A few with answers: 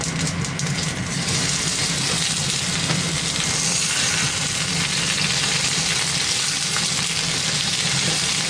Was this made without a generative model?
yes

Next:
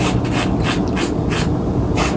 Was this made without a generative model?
yes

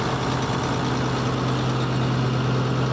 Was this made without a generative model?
yes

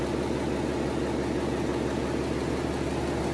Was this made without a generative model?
yes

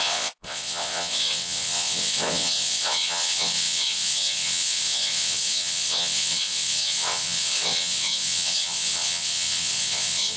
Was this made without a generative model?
no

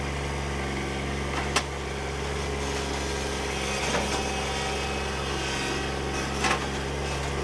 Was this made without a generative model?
yes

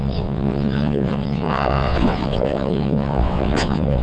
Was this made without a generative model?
no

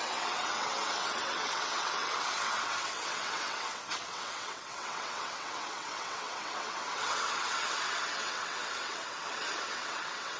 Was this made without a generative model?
no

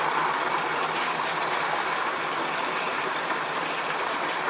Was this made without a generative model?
yes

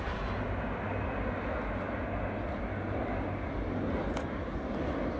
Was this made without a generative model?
yes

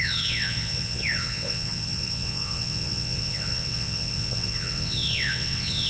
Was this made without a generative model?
no